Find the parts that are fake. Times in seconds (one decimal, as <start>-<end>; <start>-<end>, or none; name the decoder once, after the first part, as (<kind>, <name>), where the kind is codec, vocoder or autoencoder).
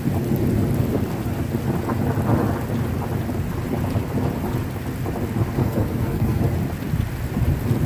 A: 5.6-6.4 (codec, SNAC)